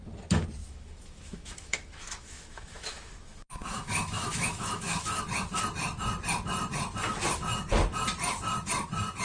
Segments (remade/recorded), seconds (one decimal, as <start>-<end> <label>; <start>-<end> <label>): 0.0-0.6 recorded; 0.6-5.2 remade; 5.2-9.2 recorded